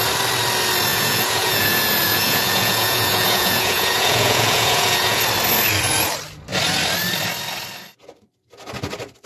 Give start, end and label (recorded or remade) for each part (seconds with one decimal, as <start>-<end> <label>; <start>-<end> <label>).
0.0-0.9 recorded; 0.9-5.2 remade; 5.2-9.3 recorded